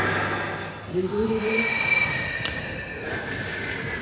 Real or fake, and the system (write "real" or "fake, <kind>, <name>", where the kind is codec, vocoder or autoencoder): real